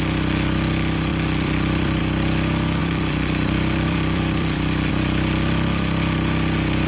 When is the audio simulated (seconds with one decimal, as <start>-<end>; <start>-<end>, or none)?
1.1-2.0; 2.8-4.9